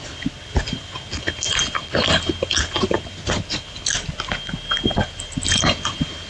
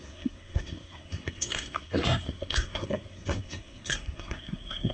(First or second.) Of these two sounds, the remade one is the second